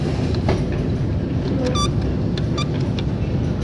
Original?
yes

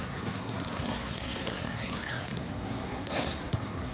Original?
no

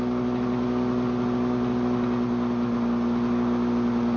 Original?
yes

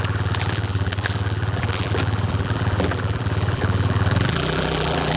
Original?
no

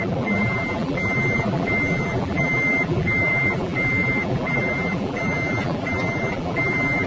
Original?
no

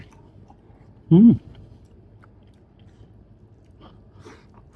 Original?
no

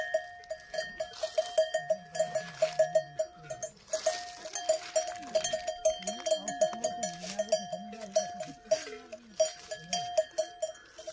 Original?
yes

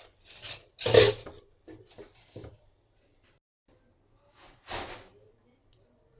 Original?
yes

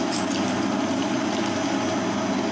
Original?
yes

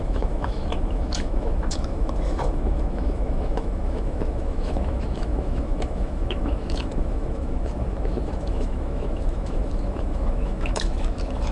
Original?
no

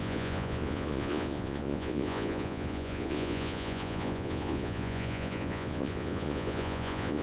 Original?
no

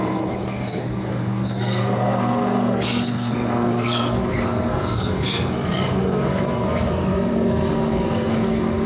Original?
no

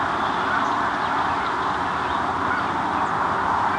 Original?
yes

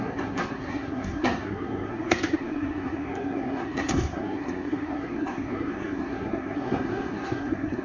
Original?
no